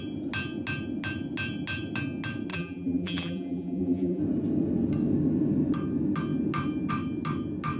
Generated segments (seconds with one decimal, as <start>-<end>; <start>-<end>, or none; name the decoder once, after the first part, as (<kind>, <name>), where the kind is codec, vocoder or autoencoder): 2.5-4.2 (vocoder, BigVGAN v2)